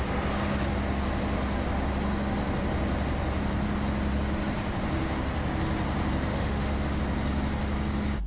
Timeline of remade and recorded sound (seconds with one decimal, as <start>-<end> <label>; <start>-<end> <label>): 0.0-6.3 recorded; 6.3-7.0 remade; 7.0-8.3 recorded